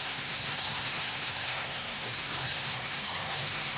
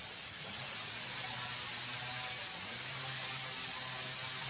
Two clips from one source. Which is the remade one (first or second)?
first